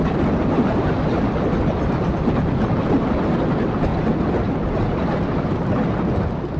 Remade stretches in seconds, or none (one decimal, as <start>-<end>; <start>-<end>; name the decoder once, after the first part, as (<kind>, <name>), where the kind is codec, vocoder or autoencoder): none